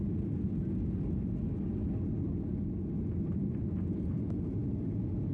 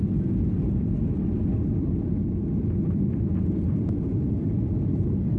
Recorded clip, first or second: first